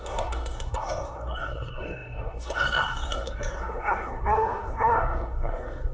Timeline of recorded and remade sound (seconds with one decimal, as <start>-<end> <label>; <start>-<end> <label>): 0.0-5.9 remade